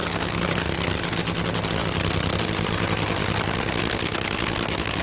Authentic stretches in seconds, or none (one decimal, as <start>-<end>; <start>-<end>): 0.9-5.0